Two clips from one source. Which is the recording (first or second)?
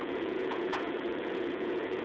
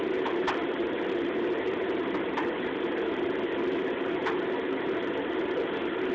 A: second